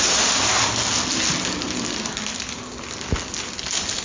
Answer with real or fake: real